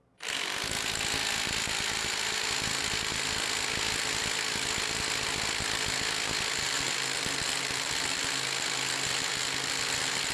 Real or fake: real